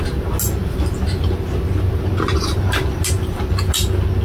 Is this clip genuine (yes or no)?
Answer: yes